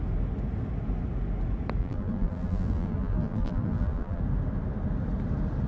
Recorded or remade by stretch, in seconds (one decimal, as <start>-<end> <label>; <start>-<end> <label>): 0.0-1.8 recorded; 1.8-4.2 remade; 4.2-5.7 recorded